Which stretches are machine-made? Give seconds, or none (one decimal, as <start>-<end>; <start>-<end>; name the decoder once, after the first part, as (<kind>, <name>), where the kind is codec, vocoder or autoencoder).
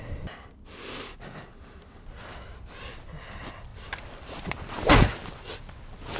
none